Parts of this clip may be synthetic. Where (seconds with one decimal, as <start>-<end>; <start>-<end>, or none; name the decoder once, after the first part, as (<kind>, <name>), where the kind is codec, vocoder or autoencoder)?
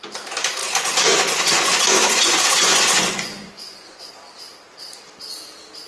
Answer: 0.6-4.1 (vocoder, Vocos)